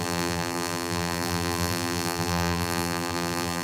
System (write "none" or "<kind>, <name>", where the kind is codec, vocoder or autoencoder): vocoder, BigVGAN v2